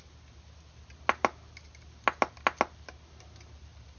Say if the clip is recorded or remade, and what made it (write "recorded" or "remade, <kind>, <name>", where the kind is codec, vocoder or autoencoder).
recorded